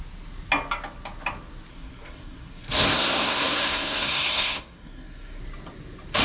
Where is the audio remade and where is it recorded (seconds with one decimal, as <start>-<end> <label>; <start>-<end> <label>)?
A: 0.0-1.7 recorded; 1.7-5.4 remade; 5.4-6.2 recorded